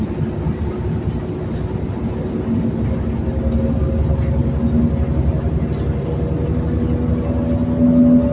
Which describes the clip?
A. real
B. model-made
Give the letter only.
A